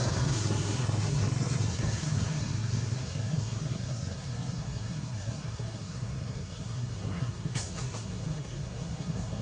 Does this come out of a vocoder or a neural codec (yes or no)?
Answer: yes